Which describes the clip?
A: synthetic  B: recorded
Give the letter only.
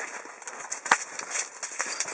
B